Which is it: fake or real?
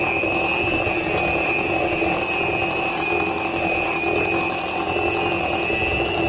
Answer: real